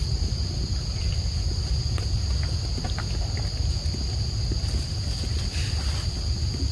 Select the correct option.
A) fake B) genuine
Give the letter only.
B